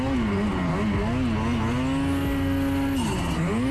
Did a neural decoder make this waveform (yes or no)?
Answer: no